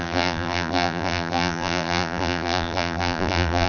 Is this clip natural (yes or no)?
no